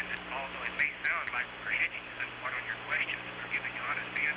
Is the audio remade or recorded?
recorded